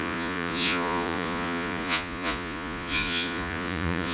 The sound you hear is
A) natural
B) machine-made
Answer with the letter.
B